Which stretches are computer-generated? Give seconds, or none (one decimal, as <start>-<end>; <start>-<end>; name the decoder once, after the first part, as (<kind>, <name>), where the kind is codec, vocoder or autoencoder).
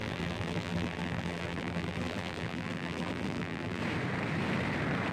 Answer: 0.0-3.8 (vocoder, BigVGAN v2)